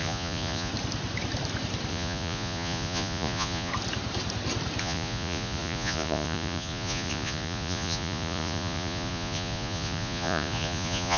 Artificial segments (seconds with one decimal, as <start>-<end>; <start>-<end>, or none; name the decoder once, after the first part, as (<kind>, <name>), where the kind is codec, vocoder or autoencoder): 0.0-0.7 (vocoder, Vocos); 1.9-3.7; 4.8-11.2